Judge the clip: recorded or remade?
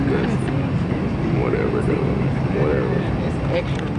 recorded